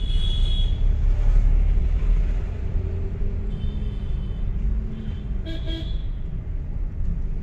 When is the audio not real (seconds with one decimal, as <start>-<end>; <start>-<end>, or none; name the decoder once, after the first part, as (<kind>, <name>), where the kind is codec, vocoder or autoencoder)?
1.8-2.9 (vocoder, BigVGAN v2)